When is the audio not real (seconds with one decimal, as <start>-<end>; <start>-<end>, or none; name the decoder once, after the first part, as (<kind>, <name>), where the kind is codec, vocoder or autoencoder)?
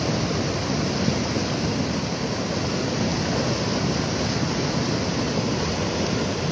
none